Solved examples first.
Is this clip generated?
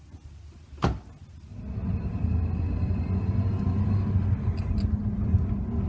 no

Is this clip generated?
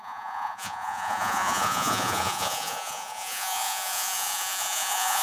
yes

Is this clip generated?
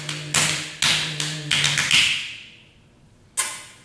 no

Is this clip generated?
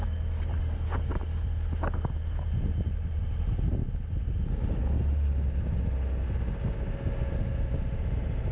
no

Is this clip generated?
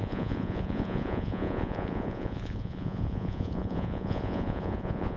yes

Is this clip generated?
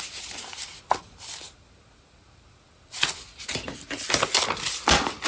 no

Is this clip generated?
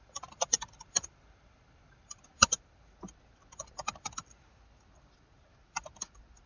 no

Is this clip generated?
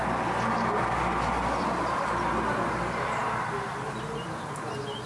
no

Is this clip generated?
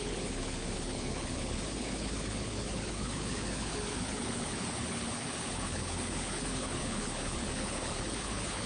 yes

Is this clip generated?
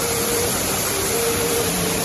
yes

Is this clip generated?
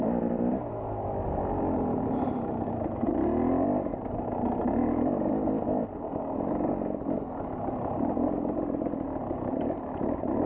no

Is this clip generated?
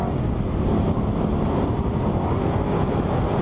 no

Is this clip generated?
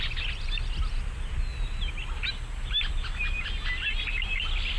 no